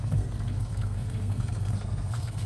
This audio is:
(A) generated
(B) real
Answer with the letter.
A